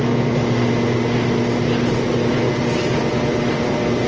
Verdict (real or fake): real